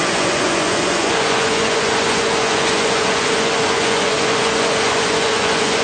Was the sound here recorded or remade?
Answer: remade